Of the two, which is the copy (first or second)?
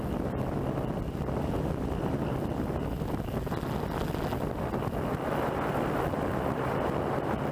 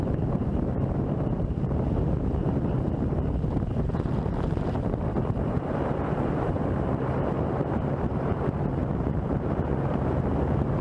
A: second